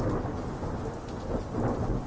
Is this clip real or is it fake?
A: real